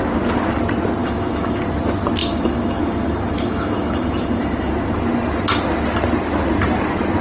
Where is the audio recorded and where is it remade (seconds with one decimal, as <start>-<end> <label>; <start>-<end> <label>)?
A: 0.0-1.0 recorded; 1.0-1.6 remade; 1.6-2.2 recorded; 2.2-4.7 remade; 4.7-7.2 recorded